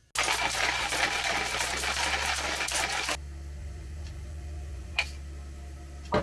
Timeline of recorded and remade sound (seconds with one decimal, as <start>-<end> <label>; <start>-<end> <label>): 0.0-3.6 recorded; 3.6-5.0 remade; 5.0-6.2 recorded